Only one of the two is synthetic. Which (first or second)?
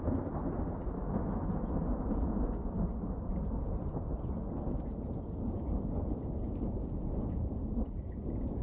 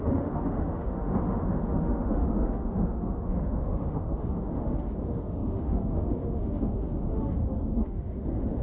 second